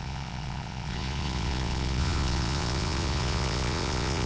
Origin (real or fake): fake